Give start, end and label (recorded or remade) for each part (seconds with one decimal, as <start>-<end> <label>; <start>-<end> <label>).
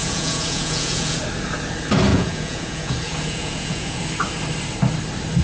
0.0-1.2 remade; 1.2-2.1 recorded; 2.1-4.0 remade; 4.0-5.4 recorded